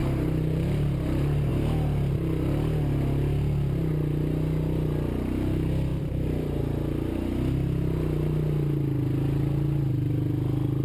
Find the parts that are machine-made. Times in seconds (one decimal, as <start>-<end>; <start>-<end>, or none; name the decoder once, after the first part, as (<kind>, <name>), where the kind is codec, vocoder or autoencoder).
0.0-1.5 (vocoder, BigVGAN v2); 5.9-6.6